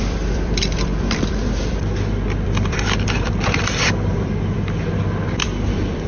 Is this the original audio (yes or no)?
no